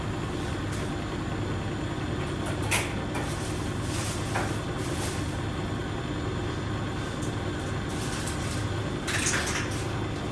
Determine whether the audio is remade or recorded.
recorded